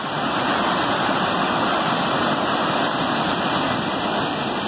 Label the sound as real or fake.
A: real